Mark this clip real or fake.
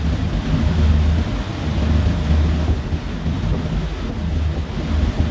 real